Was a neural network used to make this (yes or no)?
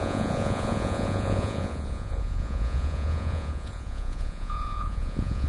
yes